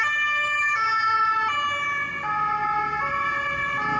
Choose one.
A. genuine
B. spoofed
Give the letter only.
A